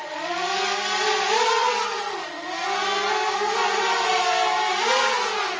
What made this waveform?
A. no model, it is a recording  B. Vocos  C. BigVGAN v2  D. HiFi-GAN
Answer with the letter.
A